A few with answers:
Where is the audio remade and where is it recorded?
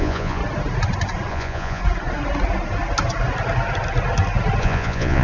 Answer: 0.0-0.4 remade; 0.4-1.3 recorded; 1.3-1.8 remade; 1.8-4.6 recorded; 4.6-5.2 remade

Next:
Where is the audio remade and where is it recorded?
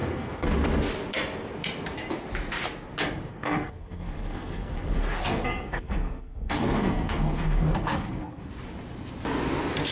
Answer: 0.0-0.5 remade; 0.5-3.3 recorded; 3.3-8.5 remade; 8.5-9.9 recorded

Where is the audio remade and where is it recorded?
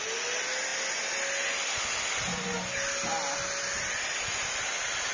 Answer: 0.0-5.1 recorded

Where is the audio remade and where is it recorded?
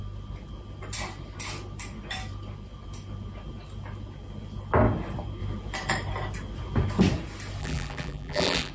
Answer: 0.0-7.6 recorded; 7.6-8.7 remade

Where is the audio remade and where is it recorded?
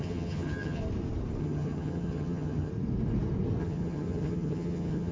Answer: 0.0-0.8 remade; 0.8-1.4 recorded; 1.4-2.7 remade; 2.7-3.6 recorded; 3.6-5.1 remade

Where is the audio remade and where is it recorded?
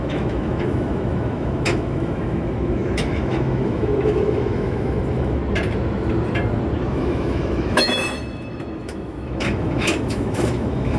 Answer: 0.0-5.4 remade; 5.4-6.9 recorded; 6.9-11.0 remade